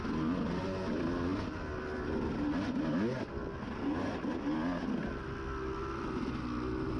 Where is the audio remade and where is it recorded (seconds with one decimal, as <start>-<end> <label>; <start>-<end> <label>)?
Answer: 0.0-7.0 recorded